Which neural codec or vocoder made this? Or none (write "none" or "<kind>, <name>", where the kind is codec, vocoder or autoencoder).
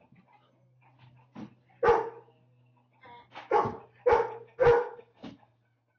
none